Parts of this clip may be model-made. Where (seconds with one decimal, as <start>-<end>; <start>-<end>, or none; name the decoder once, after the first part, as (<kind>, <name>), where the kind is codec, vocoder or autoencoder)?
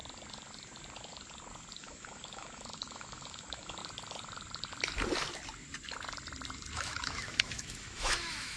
1.8-3.8 (autoencoder, DAC-VAE); 6.7-8.6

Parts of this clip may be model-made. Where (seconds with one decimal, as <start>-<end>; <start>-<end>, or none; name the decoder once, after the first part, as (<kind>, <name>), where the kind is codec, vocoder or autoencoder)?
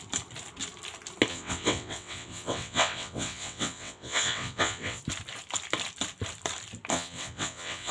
1.3-5.0 (vocoder, WaveNeXt); 6.9-7.9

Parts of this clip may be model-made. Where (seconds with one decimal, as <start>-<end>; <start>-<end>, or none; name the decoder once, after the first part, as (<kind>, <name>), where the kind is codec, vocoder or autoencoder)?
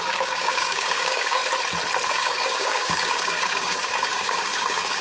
0.0-1.4 (codec, DAC); 2.1-5.0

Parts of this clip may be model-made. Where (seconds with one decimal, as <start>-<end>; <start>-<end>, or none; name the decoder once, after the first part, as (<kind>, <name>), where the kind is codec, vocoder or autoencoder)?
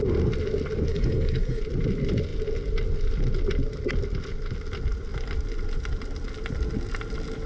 0.9-1.6 (codec, DAC)